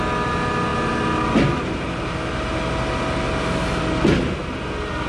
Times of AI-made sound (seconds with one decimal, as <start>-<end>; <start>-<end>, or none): none